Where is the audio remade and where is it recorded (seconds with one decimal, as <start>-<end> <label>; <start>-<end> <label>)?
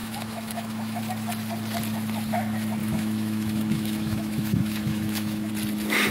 0.0-1.0 remade; 1.0-2.8 recorded; 2.8-5.5 remade; 5.5-6.1 recorded